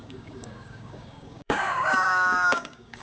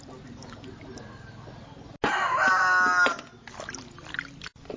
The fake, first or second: first